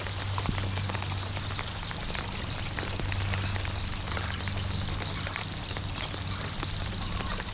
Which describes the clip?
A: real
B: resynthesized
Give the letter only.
A